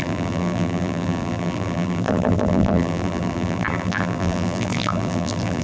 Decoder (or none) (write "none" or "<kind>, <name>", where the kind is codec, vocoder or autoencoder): vocoder, BigVGAN v2